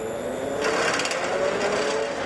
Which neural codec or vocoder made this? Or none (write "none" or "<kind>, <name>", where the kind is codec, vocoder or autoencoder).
none